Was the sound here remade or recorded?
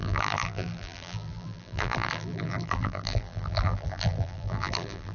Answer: remade